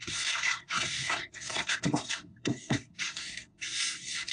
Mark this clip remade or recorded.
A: remade